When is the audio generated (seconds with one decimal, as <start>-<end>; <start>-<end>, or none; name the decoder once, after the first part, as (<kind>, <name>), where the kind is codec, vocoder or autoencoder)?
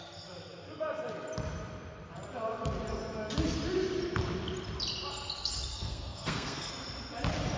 5.7-6.7 (codec, SNAC)